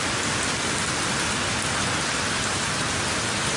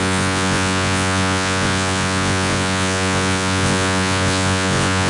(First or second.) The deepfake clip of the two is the second